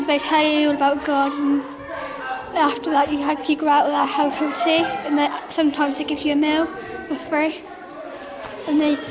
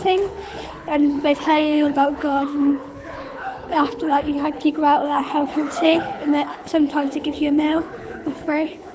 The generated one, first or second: second